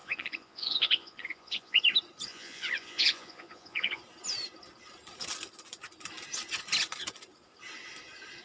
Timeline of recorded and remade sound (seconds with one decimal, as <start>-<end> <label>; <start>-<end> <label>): 0.0-1.8 remade; 1.8-2.3 recorded; 2.3-4.0 remade; 4.0-8.4 recorded